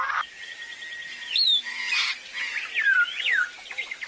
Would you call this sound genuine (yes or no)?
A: yes